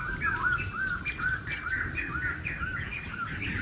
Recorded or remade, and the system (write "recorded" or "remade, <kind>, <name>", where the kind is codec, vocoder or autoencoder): recorded